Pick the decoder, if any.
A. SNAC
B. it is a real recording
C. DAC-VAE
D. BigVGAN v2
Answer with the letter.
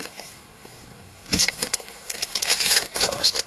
A